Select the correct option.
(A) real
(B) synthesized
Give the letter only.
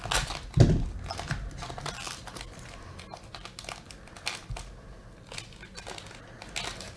A